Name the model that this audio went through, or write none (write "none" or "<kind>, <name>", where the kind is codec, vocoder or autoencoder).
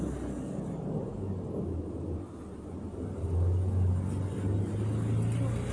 none